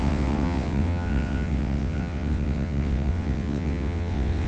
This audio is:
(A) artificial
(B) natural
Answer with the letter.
A